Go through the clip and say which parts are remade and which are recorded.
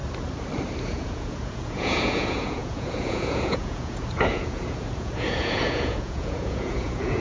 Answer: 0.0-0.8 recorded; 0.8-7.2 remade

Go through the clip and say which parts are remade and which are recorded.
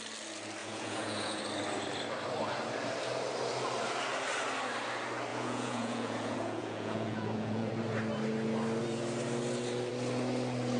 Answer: 0.0-0.6 recorded; 0.6-1.4 remade; 1.4-5.3 recorded; 5.3-7.7 remade; 7.7-10.8 recorded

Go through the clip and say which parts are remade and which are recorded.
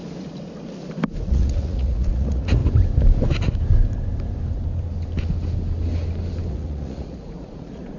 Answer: 0.0-1.2 recorded; 1.2-2.6 remade; 2.6-6.5 recorded; 6.5-8.0 remade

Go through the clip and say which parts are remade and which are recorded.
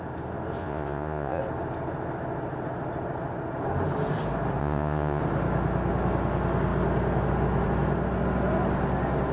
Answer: 0.0-0.6 recorded; 0.6-1.4 remade; 1.4-4.6 recorded; 4.6-5.2 remade; 5.2-9.3 recorded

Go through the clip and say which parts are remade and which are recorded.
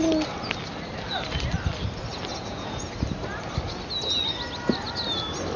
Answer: 0.0-2.3 recorded; 2.3-2.9 remade; 2.9-5.6 recorded